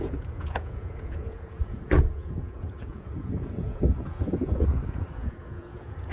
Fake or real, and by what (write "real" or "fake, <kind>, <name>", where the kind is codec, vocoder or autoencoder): fake, vocoder, Vocos